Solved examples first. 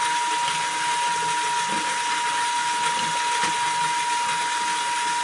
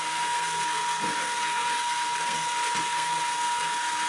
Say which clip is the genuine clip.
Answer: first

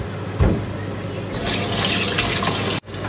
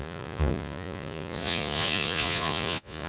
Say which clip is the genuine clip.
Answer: first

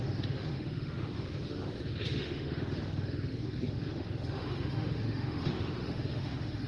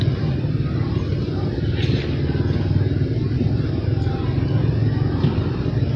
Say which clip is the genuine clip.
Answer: second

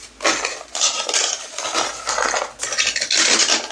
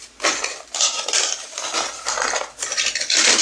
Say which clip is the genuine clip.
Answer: first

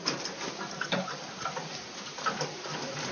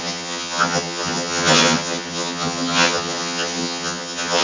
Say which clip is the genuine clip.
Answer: first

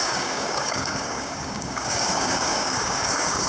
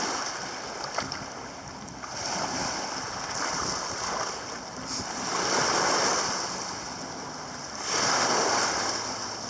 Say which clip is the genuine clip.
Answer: second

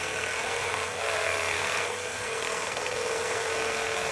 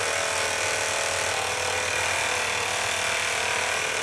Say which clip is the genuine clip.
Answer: second